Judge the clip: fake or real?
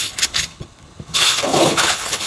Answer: fake